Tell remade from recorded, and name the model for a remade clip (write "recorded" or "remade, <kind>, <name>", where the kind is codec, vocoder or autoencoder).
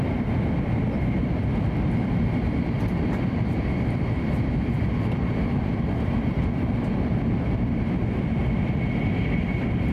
remade, vocoder, BigVGAN v2